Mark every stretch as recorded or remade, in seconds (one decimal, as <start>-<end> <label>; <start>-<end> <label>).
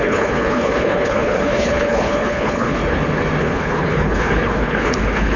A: 0.0-2.8 remade; 2.8-3.4 recorded; 3.4-5.4 remade